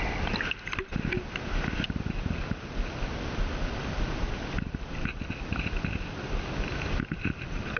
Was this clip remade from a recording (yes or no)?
no